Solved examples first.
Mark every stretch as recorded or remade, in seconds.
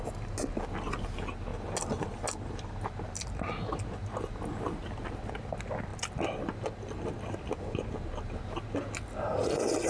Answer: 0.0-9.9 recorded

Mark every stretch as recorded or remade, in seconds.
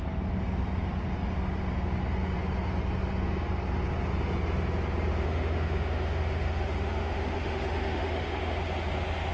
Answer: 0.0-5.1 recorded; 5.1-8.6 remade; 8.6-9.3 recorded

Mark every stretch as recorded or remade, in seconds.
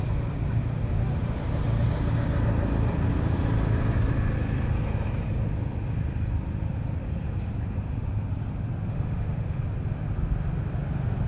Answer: 0.0-8.9 recorded; 8.9-9.6 remade; 9.6-11.3 recorded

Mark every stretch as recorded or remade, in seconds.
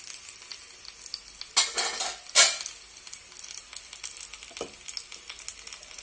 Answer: 0.0-6.0 recorded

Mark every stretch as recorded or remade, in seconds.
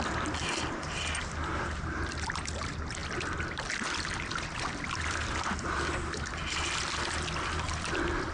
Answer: 0.0-8.3 recorded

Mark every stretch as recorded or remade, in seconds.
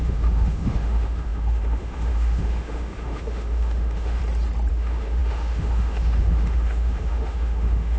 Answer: 0.0-4.2 remade; 4.2-4.7 recorded; 4.7-8.0 remade